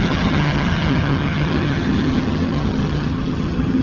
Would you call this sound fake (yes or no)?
yes